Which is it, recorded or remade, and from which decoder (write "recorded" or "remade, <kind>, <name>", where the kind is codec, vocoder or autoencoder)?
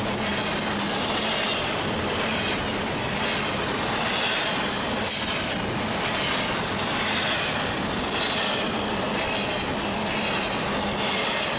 recorded